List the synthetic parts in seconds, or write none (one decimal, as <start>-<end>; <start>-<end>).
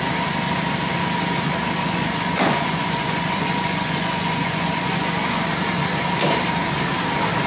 1.8-5.5